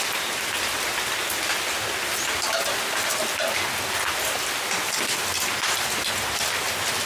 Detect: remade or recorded recorded